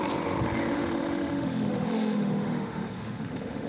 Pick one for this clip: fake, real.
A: fake